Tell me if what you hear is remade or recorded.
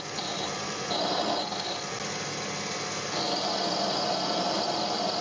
recorded